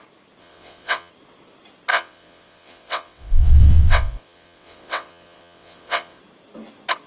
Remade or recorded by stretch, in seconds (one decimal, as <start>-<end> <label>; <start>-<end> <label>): 0.0-0.4 recorded; 0.4-1.1 remade; 1.1-1.9 recorded; 1.9-6.2 remade; 6.2-7.1 recorded